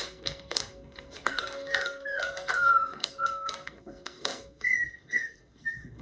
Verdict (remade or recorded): remade